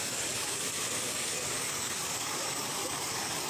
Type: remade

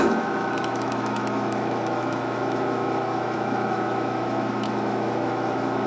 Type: remade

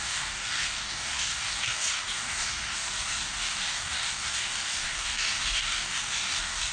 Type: remade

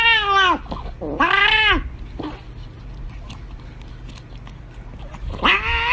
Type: recorded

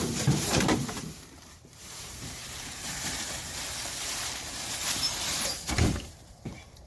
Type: remade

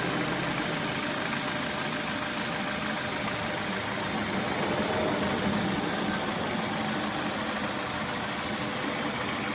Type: recorded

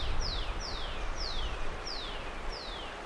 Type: recorded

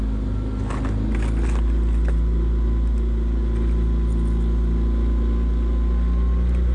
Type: recorded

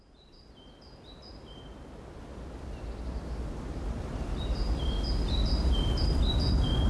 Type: remade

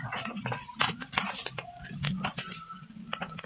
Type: recorded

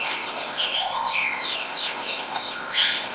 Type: remade